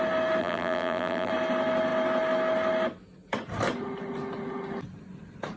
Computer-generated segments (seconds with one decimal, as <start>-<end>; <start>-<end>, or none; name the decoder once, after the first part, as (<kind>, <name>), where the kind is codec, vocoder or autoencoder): 0.4-1.3 (vocoder, BigVGAN v2)